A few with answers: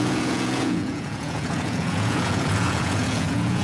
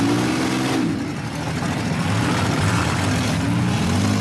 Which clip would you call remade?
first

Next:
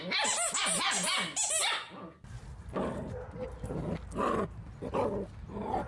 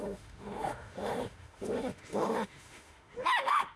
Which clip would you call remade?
second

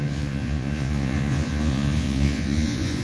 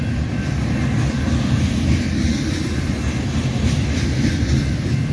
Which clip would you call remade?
first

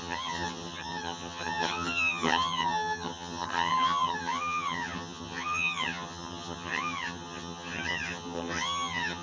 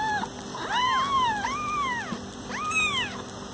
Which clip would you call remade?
first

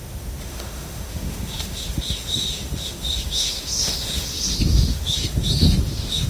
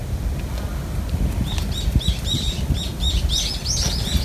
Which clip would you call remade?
first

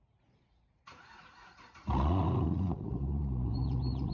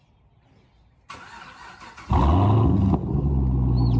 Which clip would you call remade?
first